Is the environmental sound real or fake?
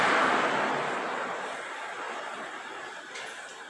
fake